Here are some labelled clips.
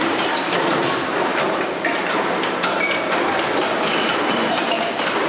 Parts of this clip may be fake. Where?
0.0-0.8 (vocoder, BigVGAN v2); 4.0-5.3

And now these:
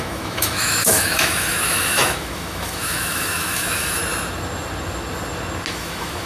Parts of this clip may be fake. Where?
0.0-4.0 (autoencoder, DAC-VAE); 5.7-6.2

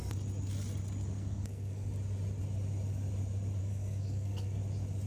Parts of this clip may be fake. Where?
1.1-1.9 (codec, SNAC); 3.6-4.6

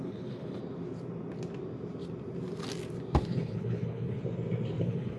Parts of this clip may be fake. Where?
0.0-0.6 (codec, HILCodec); 3.2-4.2; 4.8-5.2